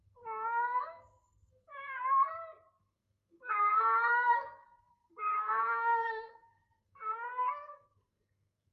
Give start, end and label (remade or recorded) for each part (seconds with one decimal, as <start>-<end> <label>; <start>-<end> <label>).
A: 0.0-2.3 remade; 2.3-2.8 recorded; 2.8-8.7 remade